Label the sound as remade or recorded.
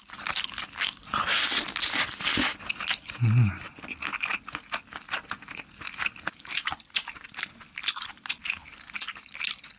recorded